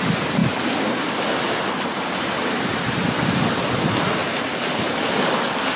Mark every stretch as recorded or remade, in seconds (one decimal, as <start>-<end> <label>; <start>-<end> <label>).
0.0-5.8 recorded